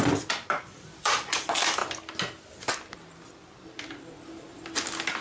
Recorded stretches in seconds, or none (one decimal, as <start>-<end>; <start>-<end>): 1.8-5.2